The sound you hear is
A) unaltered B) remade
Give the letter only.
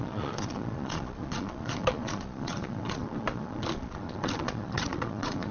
B